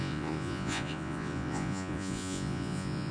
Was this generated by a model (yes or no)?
yes